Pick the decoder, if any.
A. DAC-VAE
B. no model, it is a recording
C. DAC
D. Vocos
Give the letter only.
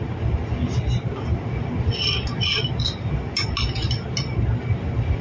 B